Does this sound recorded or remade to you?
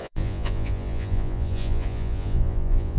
remade